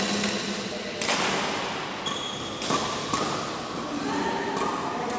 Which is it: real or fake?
real